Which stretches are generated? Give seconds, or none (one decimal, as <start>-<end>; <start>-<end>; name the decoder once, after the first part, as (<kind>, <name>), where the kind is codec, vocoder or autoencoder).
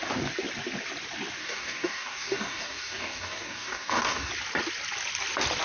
1.4-4.3 (codec, DAC)